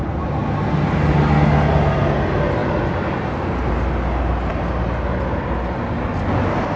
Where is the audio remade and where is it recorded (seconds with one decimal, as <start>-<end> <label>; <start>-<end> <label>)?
0.0-6.8 recorded